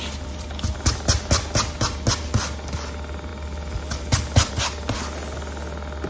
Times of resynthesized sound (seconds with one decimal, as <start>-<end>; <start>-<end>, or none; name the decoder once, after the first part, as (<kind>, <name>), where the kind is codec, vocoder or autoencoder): none